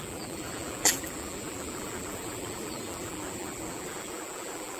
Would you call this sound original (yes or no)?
no